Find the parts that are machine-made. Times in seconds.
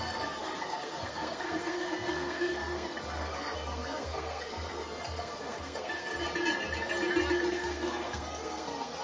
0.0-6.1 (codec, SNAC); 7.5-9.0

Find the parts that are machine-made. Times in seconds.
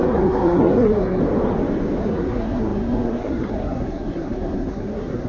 0.0-1.2 (codec, SNAC); 2.0-5.3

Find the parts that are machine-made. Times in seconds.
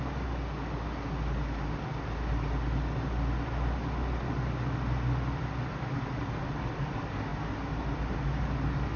none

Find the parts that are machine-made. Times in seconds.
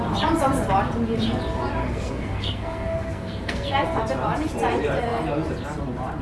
1.8-3.7 (codec, SNAC)